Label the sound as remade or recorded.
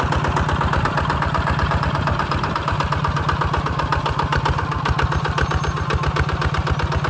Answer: recorded